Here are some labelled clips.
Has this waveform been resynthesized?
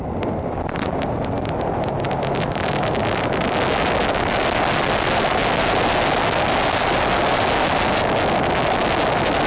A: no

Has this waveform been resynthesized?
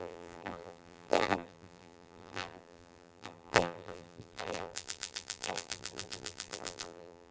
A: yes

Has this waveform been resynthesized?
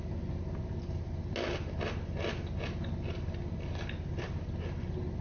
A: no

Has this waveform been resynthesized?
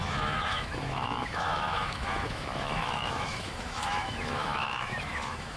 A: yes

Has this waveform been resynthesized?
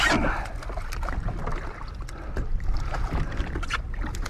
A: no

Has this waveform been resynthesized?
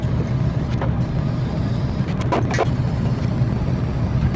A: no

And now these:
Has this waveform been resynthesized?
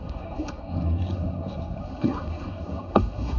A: yes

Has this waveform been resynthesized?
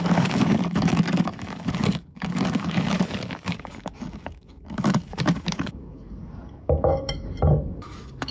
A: yes